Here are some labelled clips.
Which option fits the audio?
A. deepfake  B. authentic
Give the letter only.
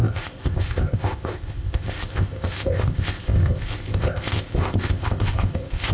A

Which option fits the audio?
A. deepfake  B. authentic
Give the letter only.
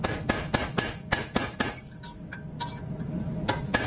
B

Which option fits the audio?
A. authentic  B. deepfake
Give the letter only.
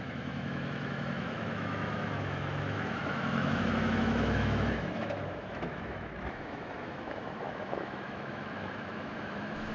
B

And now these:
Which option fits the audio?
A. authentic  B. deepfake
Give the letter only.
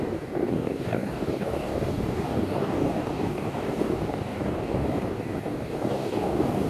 B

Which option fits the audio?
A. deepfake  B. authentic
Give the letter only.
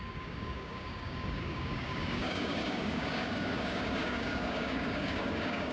A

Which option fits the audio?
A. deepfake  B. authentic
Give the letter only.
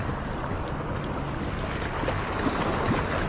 B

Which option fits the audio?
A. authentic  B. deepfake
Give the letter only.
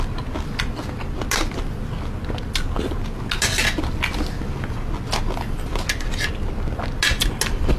A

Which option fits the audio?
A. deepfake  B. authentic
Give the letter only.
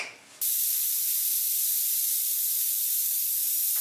B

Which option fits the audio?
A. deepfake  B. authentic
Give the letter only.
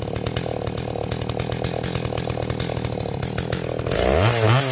B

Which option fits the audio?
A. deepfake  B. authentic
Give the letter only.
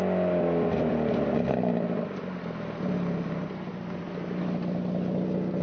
B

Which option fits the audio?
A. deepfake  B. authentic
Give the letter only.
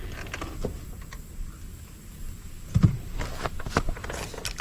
B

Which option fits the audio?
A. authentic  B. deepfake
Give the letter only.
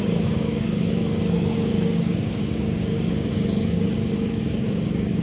B